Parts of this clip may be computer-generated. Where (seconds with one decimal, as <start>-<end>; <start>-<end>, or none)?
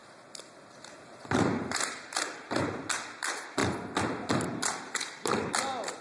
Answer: none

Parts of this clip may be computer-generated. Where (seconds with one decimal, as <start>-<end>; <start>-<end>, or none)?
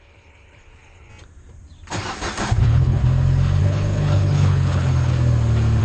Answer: 0.0-1.1; 2.6-3.0; 3.6-5.1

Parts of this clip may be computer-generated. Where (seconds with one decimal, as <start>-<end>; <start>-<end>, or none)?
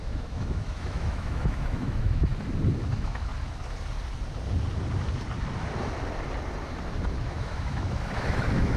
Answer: 0.0-2.3; 2.9-3.3; 7.3-8.8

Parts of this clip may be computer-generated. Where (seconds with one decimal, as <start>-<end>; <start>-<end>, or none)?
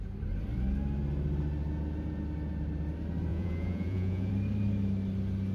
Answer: 3.3-4.3